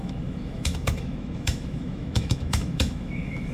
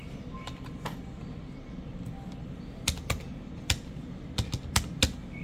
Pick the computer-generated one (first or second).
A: first